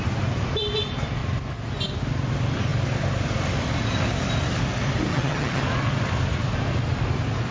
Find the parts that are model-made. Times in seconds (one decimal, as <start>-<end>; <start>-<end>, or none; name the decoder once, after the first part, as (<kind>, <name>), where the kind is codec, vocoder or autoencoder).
5.1-5.6 (vocoder, HiFi-GAN)